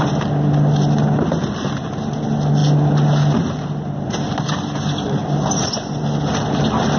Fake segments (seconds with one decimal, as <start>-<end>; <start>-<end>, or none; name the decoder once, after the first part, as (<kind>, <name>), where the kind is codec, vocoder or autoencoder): none